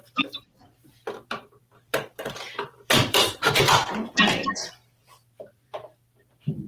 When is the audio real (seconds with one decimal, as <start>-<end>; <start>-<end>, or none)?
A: none